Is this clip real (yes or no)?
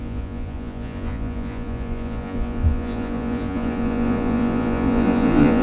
no